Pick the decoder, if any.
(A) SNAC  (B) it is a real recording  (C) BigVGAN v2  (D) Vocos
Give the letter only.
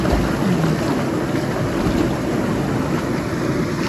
B